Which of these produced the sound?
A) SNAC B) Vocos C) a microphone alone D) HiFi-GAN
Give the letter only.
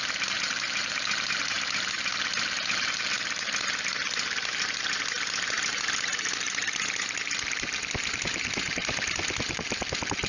C